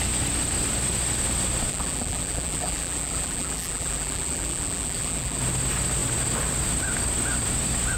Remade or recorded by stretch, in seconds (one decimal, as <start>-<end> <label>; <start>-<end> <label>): 0.0-1.7 recorded; 1.7-5.4 remade; 5.4-8.0 recorded